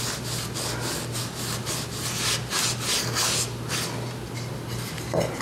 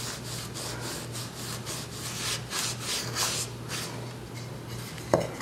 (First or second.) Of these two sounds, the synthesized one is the first